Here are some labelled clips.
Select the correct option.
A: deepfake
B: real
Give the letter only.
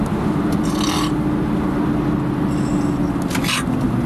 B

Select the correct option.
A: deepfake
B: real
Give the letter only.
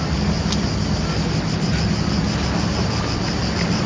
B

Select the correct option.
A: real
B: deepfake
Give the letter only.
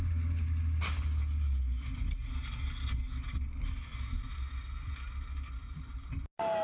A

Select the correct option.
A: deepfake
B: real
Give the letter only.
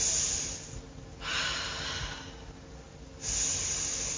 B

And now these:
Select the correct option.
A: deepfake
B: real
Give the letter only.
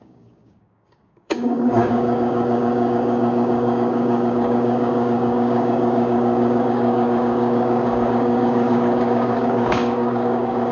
A